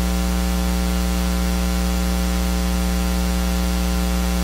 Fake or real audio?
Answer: real